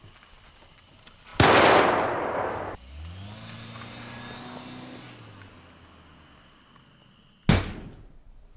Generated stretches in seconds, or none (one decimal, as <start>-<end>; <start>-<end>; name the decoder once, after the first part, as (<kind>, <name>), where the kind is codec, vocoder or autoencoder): none